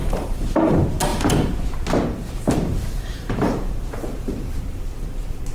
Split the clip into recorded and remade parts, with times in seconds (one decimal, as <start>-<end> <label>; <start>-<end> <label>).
0.0-0.7 remade; 0.7-1.1 recorded; 1.1-4.4 remade; 4.4-5.5 recorded